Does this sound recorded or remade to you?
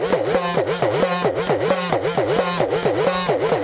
recorded